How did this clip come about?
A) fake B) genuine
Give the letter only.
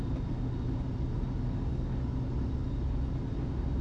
B